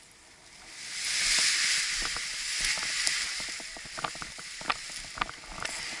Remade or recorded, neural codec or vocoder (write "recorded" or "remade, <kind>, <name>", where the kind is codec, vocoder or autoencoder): recorded